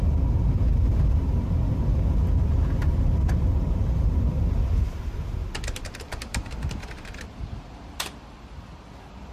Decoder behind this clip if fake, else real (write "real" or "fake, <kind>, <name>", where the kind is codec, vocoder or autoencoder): real